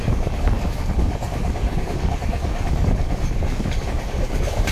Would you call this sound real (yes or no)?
no